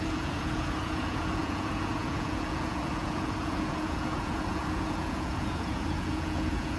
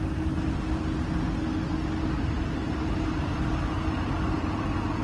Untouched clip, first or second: second